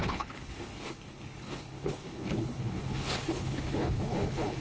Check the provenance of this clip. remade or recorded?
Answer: remade